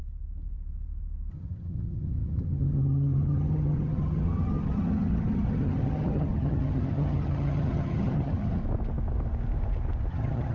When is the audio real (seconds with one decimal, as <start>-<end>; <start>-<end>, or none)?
0.0-1.3; 8.6-10.1